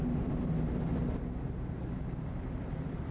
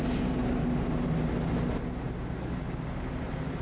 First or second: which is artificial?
first